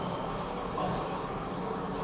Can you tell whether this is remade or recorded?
remade